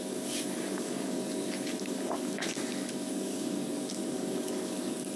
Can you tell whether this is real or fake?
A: fake